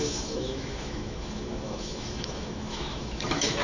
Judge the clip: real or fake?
fake